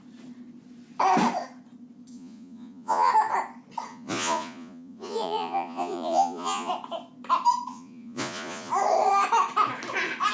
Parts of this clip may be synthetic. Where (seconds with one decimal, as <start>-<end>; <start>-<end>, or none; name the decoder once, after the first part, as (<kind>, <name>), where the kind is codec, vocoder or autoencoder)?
2.1-3.1 (vocoder, Vocos); 3.9-6.7; 7.7-8.7